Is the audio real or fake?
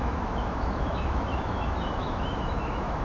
fake